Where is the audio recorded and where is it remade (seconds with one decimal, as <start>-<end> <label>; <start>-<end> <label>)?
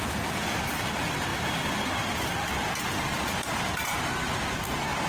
0.0-5.1 recorded